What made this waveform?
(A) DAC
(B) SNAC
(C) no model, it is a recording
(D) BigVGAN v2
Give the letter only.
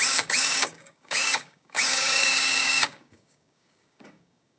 A